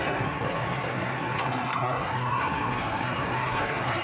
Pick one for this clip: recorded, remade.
remade